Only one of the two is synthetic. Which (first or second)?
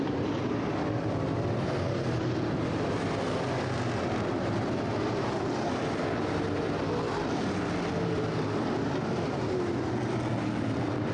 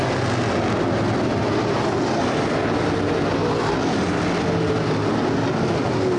first